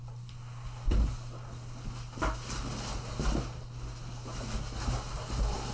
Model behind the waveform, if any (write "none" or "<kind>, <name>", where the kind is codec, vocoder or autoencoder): none